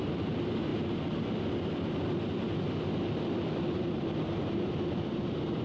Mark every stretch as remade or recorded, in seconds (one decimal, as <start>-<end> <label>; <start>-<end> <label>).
0.0-0.7 remade; 0.7-3.7 recorded; 3.7-5.6 remade

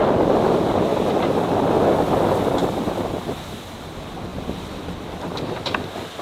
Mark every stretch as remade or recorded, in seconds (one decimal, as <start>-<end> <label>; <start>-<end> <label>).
0.0-0.9 recorded; 0.9-1.9 remade; 1.9-4.3 recorded; 4.3-5.4 remade; 5.4-6.2 recorded